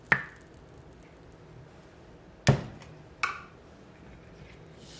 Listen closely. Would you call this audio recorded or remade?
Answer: recorded